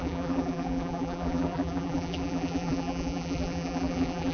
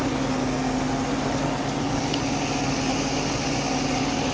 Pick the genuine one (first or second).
second